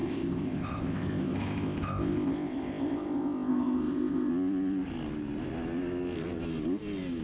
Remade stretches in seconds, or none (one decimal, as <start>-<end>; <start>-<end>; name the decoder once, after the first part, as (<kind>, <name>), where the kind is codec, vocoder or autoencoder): 0.0-4.3 (codec, ZipCodec)